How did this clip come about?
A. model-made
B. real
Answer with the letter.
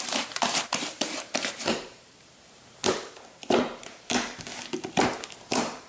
A